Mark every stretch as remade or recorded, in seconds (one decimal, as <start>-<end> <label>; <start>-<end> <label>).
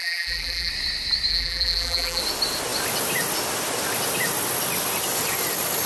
0.0-0.7 remade; 0.7-1.3 recorded; 1.3-2.2 remade; 2.2-5.9 recorded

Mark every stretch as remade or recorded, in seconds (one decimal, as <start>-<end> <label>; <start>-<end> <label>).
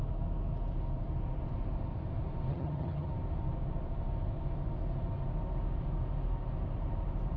0.0-2.5 recorded; 2.5-3.1 remade; 3.1-7.4 recorded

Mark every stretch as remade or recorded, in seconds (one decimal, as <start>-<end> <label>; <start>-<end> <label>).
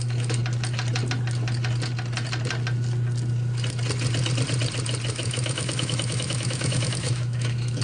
0.0-0.4 remade; 0.4-5.1 recorded; 5.1-7.8 remade